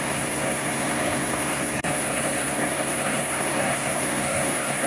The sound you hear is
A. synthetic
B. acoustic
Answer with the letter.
A